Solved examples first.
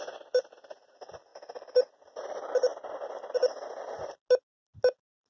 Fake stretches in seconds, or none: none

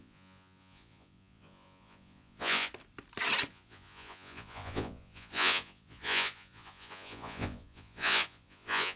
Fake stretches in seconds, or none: 0.0-2.7 (vocoder, Vocos); 3.5-9.0

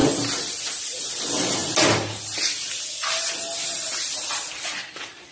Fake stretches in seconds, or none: none

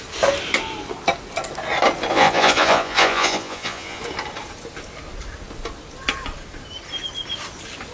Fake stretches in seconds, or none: 2.1-4.0 (vocoder, Vocos)

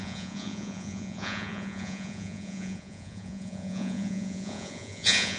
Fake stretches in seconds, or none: 0.0-5.4 (vocoder, Vocos)